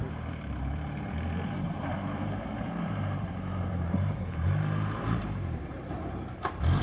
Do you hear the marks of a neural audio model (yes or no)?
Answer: yes